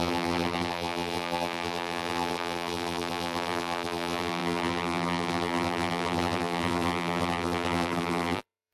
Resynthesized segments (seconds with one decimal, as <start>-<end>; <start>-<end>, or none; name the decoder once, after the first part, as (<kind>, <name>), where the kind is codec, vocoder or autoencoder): 0.0-8.7 (vocoder, BigVGAN v2)